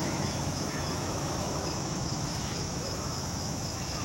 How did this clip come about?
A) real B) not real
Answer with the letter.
B